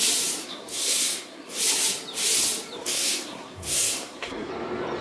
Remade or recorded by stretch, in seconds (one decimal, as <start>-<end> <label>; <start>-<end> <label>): 0.0-0.4 recorded; 0.4-1.6 remade; 1.6-2.8 recorded; 2.8-4.5 remade; 4.5-5.0 recorded